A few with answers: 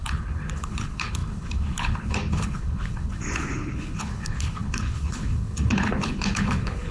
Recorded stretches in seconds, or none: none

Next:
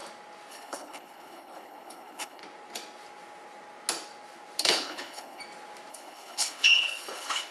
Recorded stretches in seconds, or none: 0.0-0.5; 2.4-4.6; 5.4-5.9

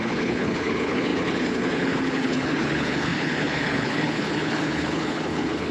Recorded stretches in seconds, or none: none

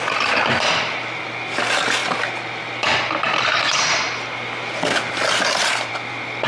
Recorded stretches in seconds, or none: 0.0-6.5

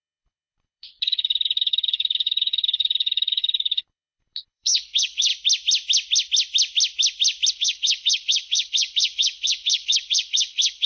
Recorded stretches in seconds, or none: 5.3-7.5

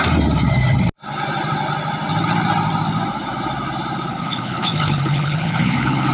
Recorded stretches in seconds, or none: 0.0-4.1